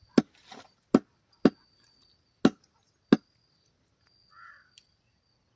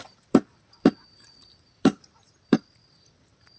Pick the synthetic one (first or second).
second